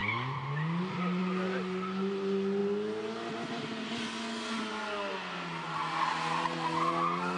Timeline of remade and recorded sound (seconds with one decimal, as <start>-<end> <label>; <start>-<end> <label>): 0.0-7.4 recorded